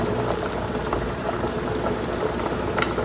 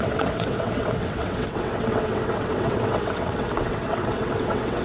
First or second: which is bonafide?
first